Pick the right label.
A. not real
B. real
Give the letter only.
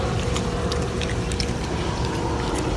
B